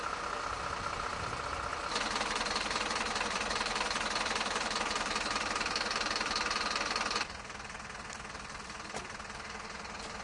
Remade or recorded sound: remade